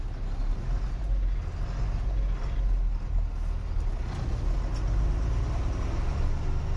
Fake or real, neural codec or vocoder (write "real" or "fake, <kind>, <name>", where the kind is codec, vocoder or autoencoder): real